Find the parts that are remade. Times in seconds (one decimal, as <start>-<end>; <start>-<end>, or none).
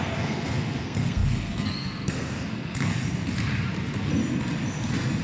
0.0-2.9